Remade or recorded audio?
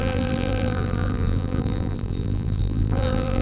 remade